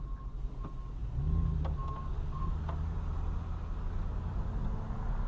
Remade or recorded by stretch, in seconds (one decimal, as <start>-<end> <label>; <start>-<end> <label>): 0.0-5.3 recorded